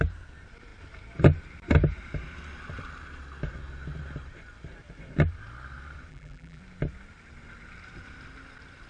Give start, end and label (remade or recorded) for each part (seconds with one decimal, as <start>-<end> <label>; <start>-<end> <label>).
0.0-6.1 recorded; 6.1-6.6 remade; 6.6-8.9 recorded